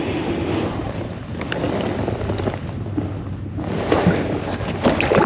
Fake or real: real